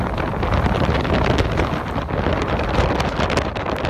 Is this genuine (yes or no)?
yes